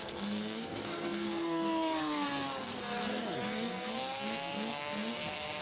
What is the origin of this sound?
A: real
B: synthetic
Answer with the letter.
B